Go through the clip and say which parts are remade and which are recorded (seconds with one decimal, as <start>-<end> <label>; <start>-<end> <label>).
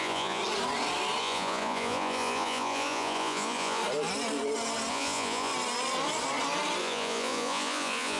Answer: 0.0-0.4 remade; 0.4-1.2 recorded; 1.2-3.8 remade; 3.8-4.9 recorded; 4.9-5.5 remade; 5.5-6.8 recorded; 6.8-8.2 remade